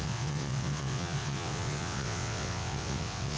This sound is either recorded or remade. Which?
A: remade